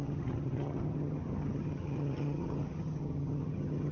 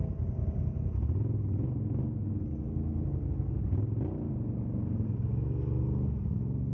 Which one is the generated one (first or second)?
first